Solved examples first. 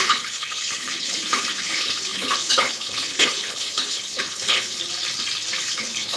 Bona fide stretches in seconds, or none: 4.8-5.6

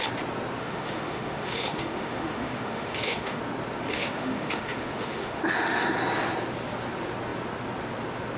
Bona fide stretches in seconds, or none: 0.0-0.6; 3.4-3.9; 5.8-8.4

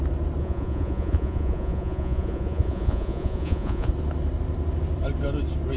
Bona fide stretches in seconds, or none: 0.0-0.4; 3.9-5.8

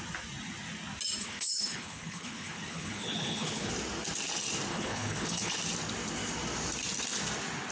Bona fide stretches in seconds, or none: 0.0-1.2; 3.7-4.7; 5.5-7.7

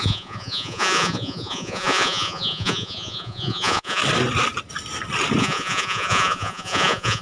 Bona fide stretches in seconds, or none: 4.0-5.4

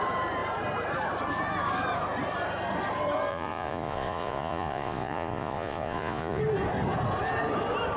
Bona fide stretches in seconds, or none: 0.0-3.3; 6.4-8.0